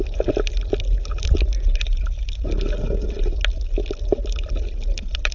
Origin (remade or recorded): recorded